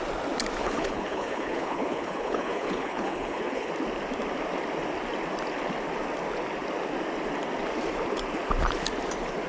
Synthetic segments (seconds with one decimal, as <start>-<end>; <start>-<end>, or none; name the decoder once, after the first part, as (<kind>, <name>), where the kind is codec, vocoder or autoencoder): 0.6-3.7 (codec, HILCodec)